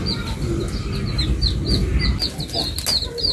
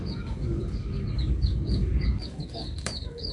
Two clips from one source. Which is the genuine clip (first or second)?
first